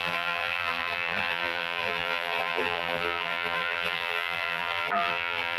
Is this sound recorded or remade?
remade